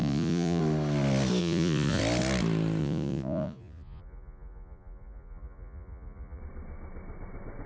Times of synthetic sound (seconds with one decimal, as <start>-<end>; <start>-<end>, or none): 0.0-0.6; 1.4-2.0; 2.8-6.4